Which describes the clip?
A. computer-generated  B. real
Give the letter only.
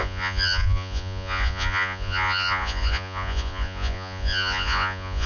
A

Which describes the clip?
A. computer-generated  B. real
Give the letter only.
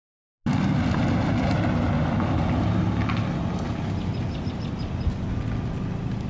B